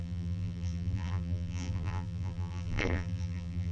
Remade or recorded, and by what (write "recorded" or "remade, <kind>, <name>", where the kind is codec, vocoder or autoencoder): remade, vocoder, BigVGAN v2